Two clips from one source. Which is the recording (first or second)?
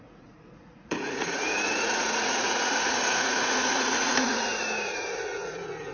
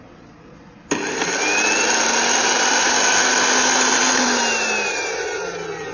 second